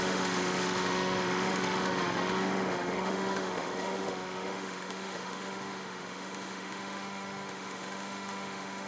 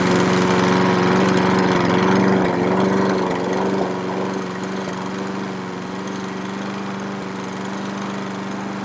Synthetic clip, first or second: first